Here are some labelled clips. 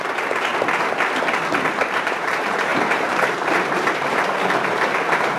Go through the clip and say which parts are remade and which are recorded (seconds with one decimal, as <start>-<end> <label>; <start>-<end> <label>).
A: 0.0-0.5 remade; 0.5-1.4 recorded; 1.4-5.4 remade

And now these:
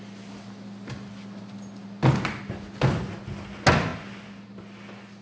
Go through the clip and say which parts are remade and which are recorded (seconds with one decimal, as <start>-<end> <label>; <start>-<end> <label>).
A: 0.0-5.2 recorded

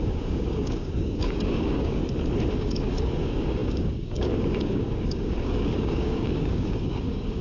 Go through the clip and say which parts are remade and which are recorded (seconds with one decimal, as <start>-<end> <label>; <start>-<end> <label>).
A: 0.0-2.0 remade; 2.0-2.6 recorded; 2.6-7.4 remade

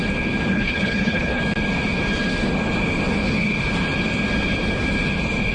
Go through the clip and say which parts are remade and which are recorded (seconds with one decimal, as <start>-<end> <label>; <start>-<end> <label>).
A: 0.0-0.5 recorded; 0.5-1.4 remade; 1.4-5.5 recorded

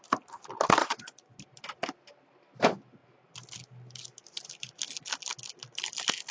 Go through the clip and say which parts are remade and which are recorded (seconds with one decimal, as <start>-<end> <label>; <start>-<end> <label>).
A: 0.0-0.8 recorded; 0.8-1.4 remade; 1.4-6.3 recorded